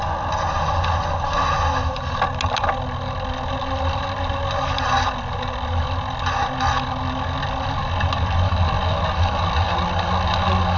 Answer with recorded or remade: recorded